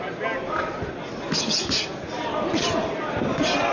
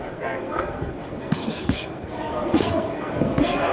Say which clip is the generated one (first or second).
second